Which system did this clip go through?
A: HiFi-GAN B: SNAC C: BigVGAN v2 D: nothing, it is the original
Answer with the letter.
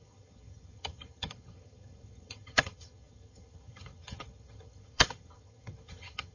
A